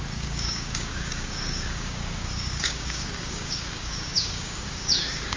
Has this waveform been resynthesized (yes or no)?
yes